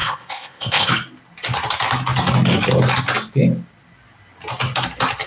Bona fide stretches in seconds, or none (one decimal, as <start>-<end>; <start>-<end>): 0.9-5.3